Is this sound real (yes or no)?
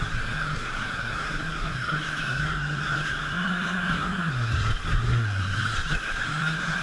no